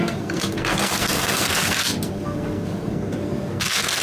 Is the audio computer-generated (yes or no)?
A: yes